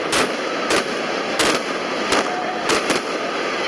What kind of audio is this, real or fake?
real